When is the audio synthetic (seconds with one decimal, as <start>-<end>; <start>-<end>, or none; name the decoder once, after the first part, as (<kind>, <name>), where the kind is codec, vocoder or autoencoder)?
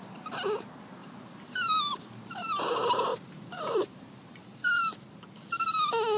1.0-2.1 (vocoder, BigVGAN v2); 3.1-4.8